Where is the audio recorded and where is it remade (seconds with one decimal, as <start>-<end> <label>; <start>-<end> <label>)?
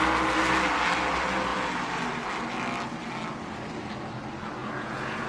0.0-4.6 recorded; 4.6-5.3 remade